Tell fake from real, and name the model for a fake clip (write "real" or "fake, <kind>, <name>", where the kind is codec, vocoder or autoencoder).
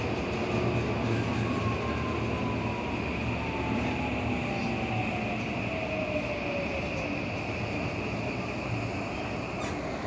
real